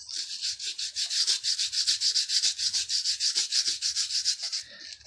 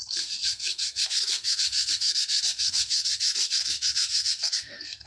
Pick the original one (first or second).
first